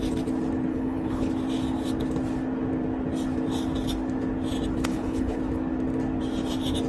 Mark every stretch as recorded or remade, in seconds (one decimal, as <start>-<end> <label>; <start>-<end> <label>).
0.0-0.7 recorded; 0.7-1.3 remade; 1.3-4.9 recorded; 4.9-5.4 remade; 5.4-6.9 recorded